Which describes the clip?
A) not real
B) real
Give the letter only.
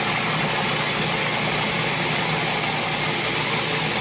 B